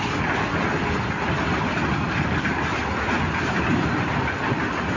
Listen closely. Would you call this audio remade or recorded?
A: recorded